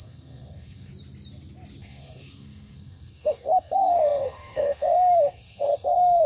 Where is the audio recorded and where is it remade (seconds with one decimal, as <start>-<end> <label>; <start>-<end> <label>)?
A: 0.0-0.9 remade; 0.9-1.8 recorded; 1.8-6.3 remade